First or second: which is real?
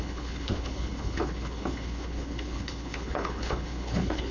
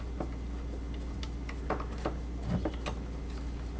second